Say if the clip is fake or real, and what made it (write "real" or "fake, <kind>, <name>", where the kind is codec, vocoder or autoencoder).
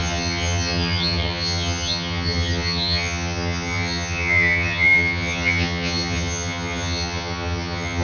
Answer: fake, vocoder, HiFi-GAN